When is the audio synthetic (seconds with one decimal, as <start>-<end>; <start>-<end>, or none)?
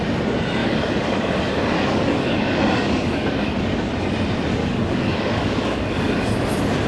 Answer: 0.6-3.9; 4.6-6.3